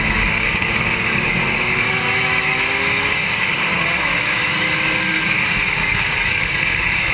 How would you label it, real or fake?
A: fake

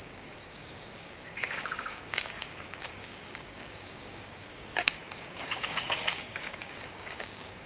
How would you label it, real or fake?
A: fake